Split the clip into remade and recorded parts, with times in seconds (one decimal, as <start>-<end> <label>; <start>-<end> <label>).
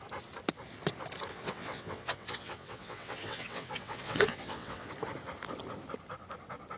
0.0-1.3 recorded; 1.3-4.9 remade; 4.9-6.8 recorded